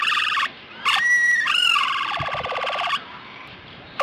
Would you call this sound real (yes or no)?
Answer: no